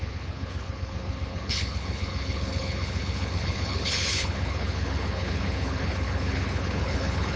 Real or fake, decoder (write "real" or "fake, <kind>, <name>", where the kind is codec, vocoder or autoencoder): fake, codec, HILCodec